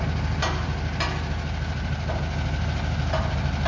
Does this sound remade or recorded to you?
recorded